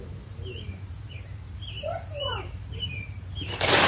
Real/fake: fake